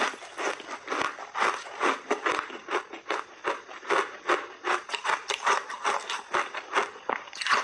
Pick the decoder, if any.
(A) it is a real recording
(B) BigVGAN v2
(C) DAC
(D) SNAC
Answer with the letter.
A